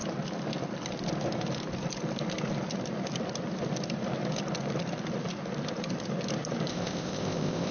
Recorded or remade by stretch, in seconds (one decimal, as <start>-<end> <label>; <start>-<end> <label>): 0.0-6.7 recorded; 6.7-7.7 remade